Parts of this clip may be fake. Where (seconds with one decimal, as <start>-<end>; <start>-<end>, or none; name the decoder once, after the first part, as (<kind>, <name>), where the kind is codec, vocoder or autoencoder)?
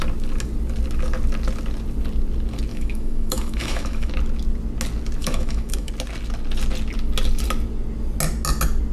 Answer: 2.7-4.1 (autoencoder, DAC-VAE); 5.2-5.9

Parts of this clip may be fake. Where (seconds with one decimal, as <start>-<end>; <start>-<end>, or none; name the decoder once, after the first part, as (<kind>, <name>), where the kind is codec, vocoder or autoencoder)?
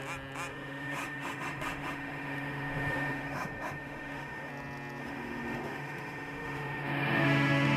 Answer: 0.5-4.5 (autoencoder, DAC-VAE); 5.0-7.8